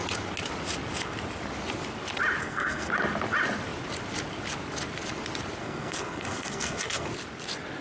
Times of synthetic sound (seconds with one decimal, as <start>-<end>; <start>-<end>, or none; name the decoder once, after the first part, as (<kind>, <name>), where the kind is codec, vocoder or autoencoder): 2.4-2.9 (codec, SNAC); 5.6-7.1